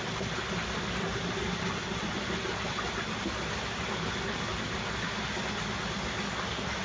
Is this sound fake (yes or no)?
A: no